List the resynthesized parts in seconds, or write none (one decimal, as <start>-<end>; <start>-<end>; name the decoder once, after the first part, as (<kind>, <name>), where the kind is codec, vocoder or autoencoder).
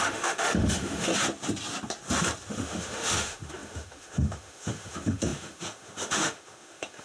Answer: 0.0-1.1 (autoencoder, DAC-VAE); 2.5-7.0